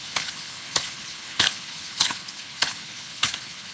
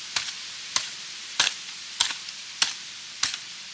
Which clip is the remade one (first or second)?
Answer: first